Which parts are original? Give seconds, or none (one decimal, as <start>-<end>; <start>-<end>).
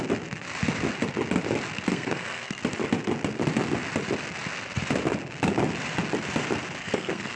0.0-1.9; 2.6-6.8